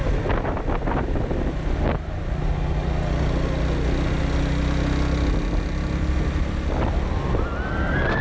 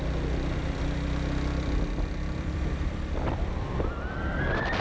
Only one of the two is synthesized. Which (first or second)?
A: second